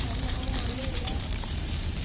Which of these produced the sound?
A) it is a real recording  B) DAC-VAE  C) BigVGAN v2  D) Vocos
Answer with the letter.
C